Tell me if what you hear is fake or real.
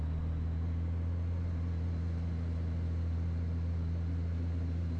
real